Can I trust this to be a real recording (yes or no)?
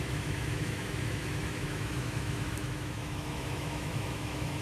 no